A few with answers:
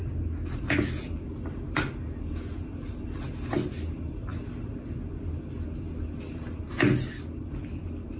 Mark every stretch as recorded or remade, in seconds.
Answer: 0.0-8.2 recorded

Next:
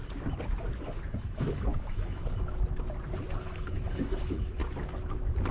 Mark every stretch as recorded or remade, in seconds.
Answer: 0.0-1.1 recorded; 1.1-2.2 remade; 2.2-3.4 recorded; 3.4-4.6 remade; 4.6-5.5 recorded

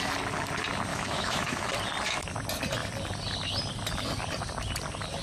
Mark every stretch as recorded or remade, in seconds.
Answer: 0.0-0.9 recorded; 0.9-1.7 remade; 1.7-5.2 recorded

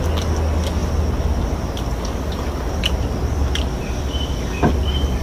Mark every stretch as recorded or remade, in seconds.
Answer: 0.0-5.2 recorded

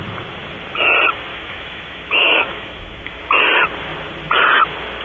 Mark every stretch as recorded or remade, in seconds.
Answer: 0.0-1.3 recorded; 1.3-3.2 remade; 3.2-5.0 recorded

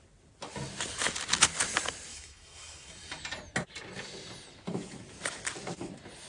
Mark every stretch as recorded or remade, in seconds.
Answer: 0.0-2.1 recorded; 2.1-3.2 remade; 3.2-6.3 recorded